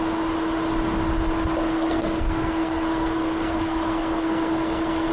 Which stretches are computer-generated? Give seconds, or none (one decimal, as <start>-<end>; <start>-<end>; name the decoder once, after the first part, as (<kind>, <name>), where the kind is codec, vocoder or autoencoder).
1.7-5.1 (codec, SNAC)